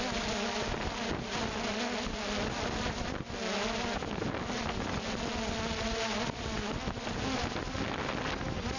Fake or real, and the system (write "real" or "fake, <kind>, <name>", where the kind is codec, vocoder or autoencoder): real